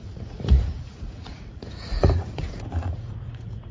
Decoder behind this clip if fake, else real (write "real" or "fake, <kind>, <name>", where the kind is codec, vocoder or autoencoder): fake, vocoder, Vocos